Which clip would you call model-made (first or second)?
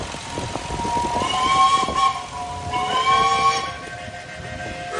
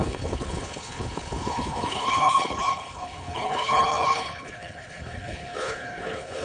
second